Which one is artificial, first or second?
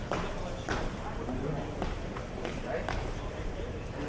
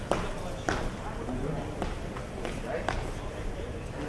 first